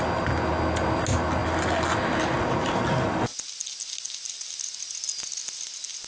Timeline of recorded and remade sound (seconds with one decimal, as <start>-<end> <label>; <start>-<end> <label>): 0.0-6.1 recorded